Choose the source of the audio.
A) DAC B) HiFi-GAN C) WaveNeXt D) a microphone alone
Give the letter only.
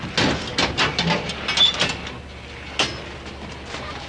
D